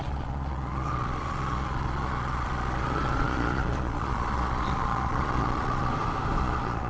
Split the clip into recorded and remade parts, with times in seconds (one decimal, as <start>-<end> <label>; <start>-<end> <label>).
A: 0.0-5.9 remade; 5.9-6.4 recorded; 6.4-6.9 remade